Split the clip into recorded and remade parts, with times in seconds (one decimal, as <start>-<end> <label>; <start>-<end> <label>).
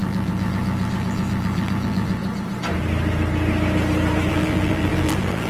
0.0-2.2 remade; 2.2-4.3 recorded; 4.3-5.5 remade